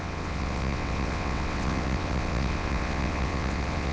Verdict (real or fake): fake